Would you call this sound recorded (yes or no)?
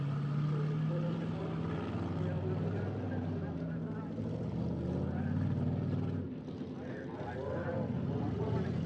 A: yes